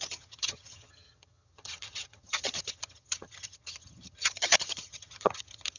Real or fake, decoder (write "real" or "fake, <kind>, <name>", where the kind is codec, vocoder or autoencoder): fake, vocoder, HiFi-GAN